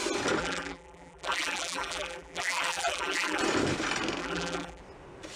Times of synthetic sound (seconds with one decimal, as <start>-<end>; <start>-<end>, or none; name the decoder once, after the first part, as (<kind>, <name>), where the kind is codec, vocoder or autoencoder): 0.4-3.4 (vocoder, BigVGAN v2); 4.2-4.8